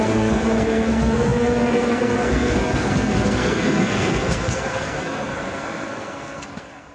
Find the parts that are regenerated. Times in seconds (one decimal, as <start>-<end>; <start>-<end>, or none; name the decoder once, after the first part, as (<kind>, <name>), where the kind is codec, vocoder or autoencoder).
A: 0.0-6.9 (codec, SNAC)